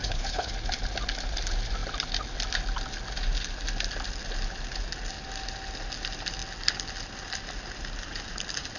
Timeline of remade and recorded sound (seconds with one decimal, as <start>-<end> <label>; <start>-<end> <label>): 0.0-0.5 remade; 0.5-8.8 recorded